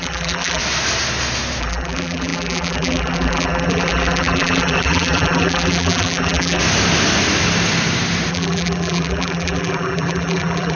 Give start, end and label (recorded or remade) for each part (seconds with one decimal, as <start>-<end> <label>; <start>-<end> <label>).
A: 0.0-0.6 remade; 0.6-1.6 recorded; 1.6-6.6 remade; 6.6-8.3 recorded; 8.3-10.8 remade

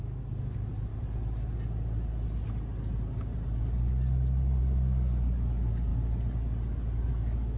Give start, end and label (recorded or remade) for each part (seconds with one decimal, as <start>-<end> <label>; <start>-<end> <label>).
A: 0.0-0.9 remade; 0.9-4.6 recorded; 4.6-5.9 remade; 5.9-7.1 recorded; 7.1-7.6 remade